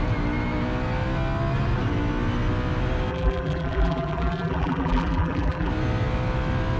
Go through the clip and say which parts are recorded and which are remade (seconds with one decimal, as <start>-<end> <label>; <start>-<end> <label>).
0.0-3.1 recorded; 3.1-5.7 remade; 5.7-6.8 recorded